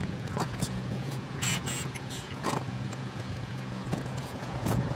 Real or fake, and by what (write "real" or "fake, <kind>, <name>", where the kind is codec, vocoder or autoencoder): fake, vocoder, Vocos